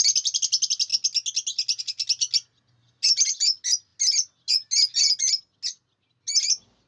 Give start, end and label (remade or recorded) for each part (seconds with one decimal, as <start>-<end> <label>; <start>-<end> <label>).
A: 0.0-6.9 recorded